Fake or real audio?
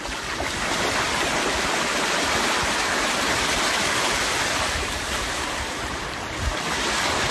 real